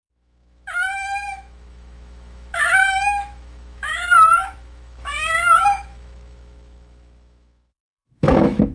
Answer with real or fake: fake